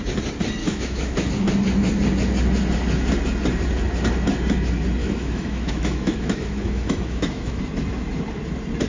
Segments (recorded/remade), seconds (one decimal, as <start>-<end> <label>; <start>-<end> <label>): 0.0-0.6 recorded; 0.6-1.3 remade; 1.3-5.0 recorded; 5.0-7.6 remade; 7.6-8.9 recorded